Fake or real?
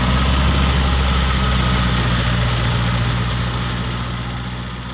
real